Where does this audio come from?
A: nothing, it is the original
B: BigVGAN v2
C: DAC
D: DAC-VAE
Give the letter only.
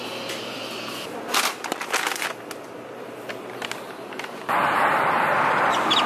A